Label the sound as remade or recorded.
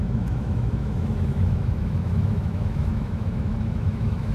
remade